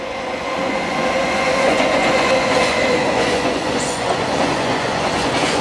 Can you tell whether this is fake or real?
fake